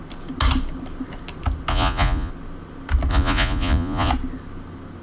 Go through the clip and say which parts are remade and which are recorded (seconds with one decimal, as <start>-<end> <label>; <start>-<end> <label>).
0.0-1.7 recorded; 1.7-2.3 remade; 2.3-3.1 recorded; 3.1-4.1 remade; 4.1-5.0 recorded